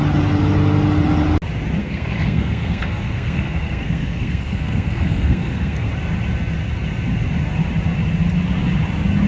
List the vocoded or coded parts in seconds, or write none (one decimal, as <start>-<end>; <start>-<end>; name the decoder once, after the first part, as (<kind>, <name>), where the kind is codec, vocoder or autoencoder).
1.8-5.9 (codec, SNAC)